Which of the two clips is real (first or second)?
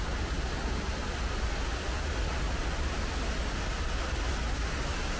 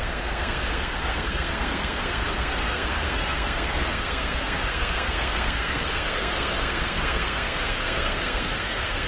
first